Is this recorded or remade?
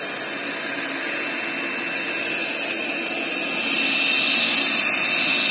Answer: recorded